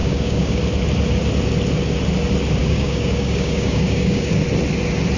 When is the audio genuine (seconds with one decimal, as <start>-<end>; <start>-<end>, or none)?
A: 0.6-2.6; 4.4-5.2

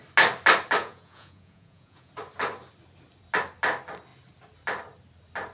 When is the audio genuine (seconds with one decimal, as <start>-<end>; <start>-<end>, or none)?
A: 0.0-0.8; 2.1-5.5

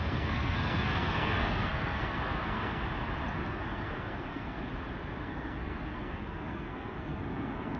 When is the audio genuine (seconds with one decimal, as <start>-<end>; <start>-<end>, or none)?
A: 2.8-3.3; 4.7-5.2

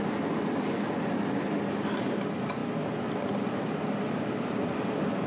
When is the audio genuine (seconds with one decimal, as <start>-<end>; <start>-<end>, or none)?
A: 0.0-5.3